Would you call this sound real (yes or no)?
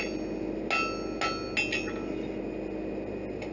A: yes